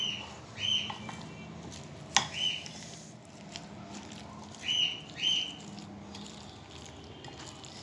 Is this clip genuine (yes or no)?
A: yes